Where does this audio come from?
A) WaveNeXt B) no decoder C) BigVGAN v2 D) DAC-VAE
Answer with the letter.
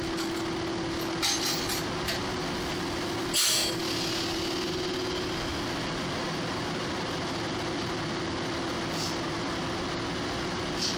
B